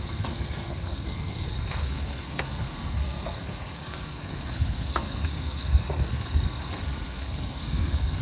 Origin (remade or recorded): remade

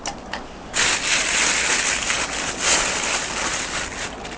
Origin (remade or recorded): recorded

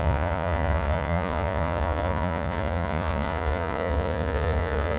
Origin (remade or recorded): remade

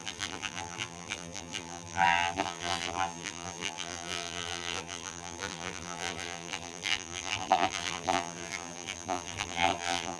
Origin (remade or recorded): remade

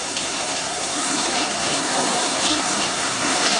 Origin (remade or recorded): remade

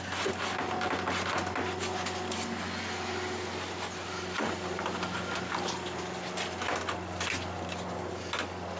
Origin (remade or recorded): recorded